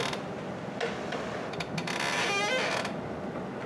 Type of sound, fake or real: real